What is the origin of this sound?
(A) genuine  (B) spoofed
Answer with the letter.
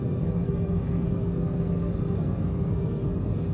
B